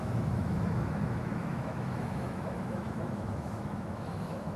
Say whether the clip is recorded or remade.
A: remade